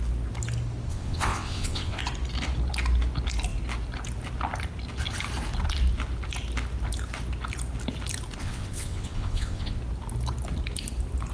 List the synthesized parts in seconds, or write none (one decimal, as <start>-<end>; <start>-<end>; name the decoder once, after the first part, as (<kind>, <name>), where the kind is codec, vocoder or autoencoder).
0.9-2.0 (vocoder, WaveNeXt); 8.4-9.8

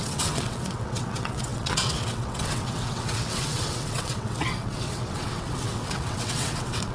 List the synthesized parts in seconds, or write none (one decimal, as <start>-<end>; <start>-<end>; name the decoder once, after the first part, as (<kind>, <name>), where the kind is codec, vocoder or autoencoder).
0.0-6.9 (vocoder, WaveNeXt)

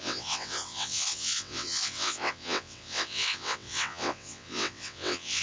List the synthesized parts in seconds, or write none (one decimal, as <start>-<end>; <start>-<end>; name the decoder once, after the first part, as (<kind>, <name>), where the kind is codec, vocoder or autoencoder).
0.0-5.4 (vocoder, WaveNeXt)

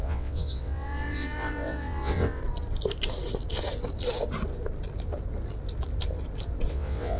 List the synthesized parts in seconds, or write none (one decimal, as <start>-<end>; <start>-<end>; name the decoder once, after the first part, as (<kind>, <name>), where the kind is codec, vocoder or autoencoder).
0.0-2.4 (vocoder, WaveNeXt); 6.7-7.2

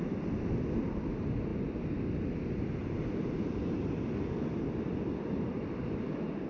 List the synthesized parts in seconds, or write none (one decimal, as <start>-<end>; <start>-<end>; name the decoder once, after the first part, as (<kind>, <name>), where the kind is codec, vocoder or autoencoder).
none